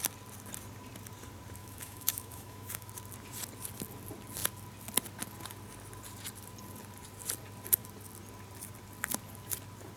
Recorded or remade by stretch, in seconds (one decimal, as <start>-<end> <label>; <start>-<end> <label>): 0.0-1.6 recorded; 1.6-2.9 remade; 2.9-10.0 recorded